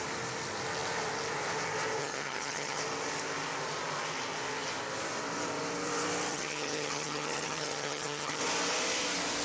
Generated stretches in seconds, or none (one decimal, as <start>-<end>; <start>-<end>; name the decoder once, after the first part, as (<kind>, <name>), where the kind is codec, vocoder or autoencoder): 2.0-2.8 (vocoder, HiFi-GAN); 6.3-8.4